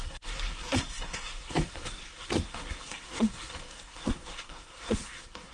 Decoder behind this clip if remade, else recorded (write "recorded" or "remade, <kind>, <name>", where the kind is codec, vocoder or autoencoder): remade, codec, SNAC